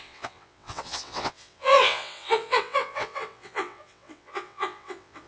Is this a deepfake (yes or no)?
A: yes